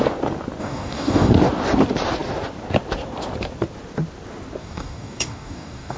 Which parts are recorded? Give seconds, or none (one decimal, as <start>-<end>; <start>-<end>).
0.0-0.6; 1.3-4.6